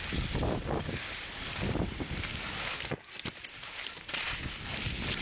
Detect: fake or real real